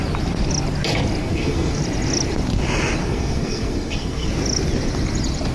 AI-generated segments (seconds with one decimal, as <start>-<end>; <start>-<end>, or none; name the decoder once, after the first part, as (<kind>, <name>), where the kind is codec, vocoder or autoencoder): 1.2-1.8 (codec, SNAC); 3.0-4.3